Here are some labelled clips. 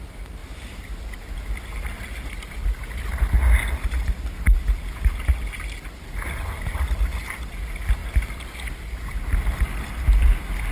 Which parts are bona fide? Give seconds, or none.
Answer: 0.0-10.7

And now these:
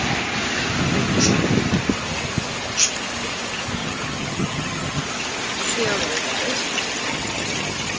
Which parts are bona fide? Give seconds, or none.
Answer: 0.0-3.8; 5.0-7.1

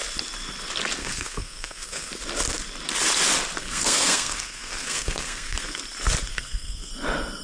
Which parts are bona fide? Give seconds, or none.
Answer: 0.0-1.0; 2.1-3.6; 5.8-6.3; 6.9-7.4

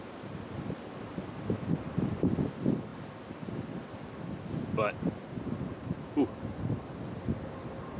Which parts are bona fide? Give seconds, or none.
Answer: 0.0-8.0

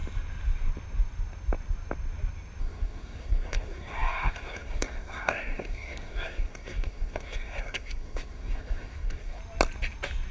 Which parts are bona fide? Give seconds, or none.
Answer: 0.0-2.6; 9.4-10.3

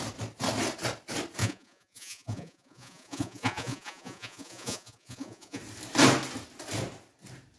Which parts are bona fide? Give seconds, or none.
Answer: 0.0-1.4; 5.6-7.6

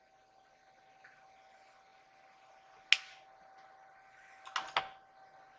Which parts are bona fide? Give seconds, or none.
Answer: 0.0-5.6

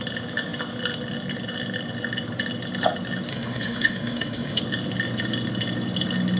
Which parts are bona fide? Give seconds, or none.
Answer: 0.0-3.3; 4.6-6.4